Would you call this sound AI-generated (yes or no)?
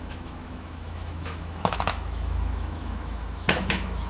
yes